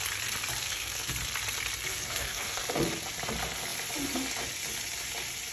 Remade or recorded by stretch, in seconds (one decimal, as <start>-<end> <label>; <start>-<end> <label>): 0.0-0.6 recorded; 0.6-1.1 remade; 1.1-1.9 recorded; 1.9-2.6 remade; 2.6-5.5 recorded